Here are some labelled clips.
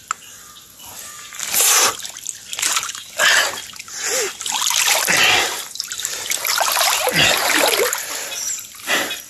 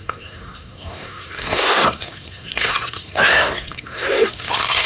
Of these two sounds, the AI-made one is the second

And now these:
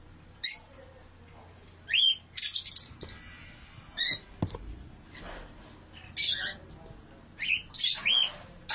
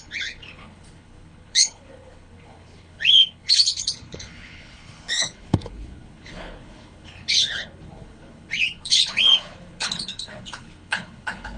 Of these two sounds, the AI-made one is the second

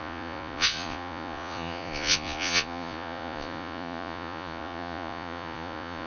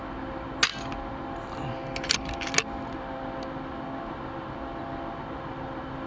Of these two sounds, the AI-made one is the first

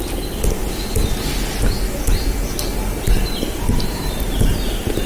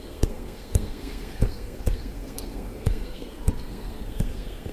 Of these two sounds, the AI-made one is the second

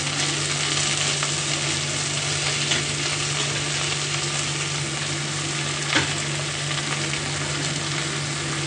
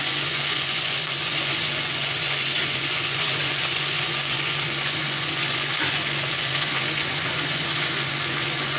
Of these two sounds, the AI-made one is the second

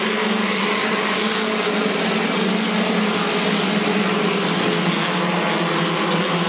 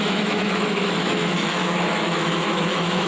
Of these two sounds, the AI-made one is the second